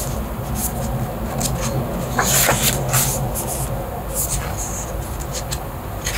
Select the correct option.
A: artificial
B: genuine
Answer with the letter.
B